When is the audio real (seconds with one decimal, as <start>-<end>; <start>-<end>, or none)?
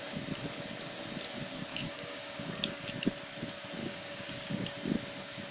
0.0-1.7; 2.8-3.8; 4.6-5.5